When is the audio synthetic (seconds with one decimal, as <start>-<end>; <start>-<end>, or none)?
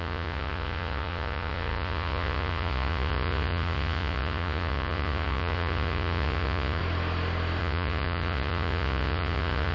0.0-6.8; 7.6-9.7